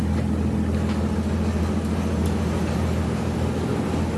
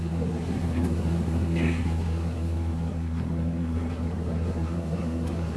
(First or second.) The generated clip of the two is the second